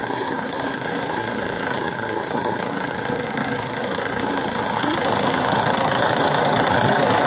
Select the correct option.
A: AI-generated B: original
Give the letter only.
A